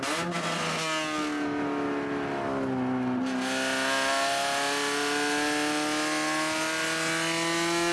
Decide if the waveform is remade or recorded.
recorded